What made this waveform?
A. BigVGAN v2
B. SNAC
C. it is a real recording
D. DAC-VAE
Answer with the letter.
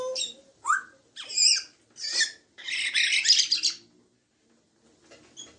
C